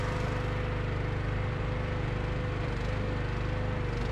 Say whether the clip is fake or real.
real